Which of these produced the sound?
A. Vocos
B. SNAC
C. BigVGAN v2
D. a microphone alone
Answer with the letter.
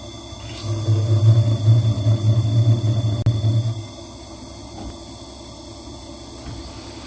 D